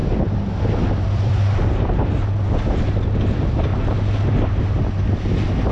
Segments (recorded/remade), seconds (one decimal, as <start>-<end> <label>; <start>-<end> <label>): 0.0-5.7 recorded